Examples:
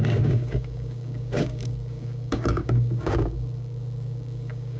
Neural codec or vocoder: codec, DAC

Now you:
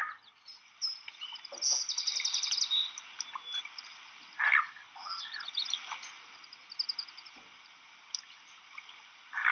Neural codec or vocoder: none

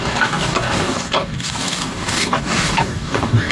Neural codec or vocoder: codec, DAC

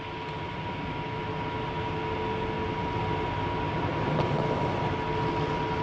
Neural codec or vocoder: none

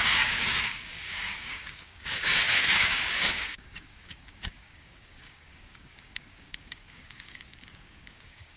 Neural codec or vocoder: codec, DAC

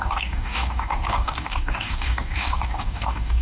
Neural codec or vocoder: codec, DAC